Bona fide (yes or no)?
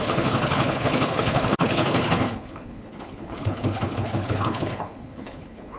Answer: no